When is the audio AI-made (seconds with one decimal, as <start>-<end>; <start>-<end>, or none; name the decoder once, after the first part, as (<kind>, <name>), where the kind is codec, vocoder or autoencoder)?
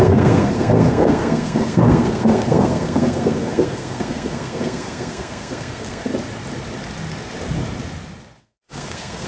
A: 0.0-6.1 (codec, SNAC); 8.4-9.3